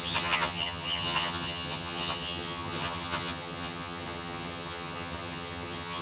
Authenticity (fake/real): fake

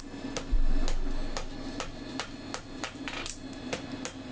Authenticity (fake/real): real